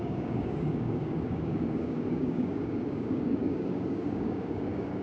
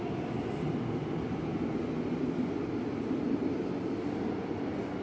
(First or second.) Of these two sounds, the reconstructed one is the first